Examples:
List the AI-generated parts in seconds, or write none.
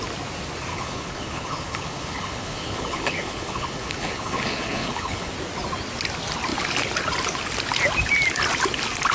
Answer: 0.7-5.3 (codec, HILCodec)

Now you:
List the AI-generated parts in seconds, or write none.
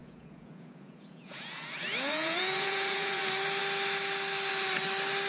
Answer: 0.0-3.2 (vocoder, Vocos)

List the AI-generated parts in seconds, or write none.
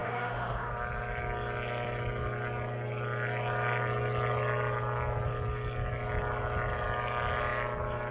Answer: 0.0-0.7 (autoencoder, DAC-VAE)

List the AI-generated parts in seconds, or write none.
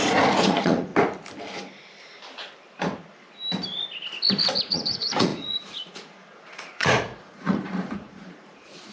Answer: 0.0-0.9 (vocoder, Vocos); 4.6-8.9